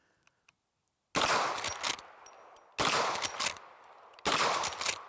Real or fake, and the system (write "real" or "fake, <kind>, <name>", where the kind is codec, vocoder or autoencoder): real